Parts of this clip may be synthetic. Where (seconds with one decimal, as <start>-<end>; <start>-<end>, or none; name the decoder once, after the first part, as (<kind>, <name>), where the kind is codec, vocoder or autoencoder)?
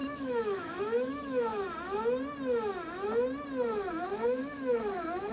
0.0-1.5 (autoencoder, DAC-VAE); 3.9-5.3